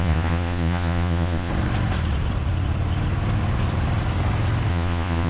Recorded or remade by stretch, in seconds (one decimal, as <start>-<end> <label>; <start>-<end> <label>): 0.0-1.5 remade; 1.5-4.7 recorded; 4.7-5.3 remade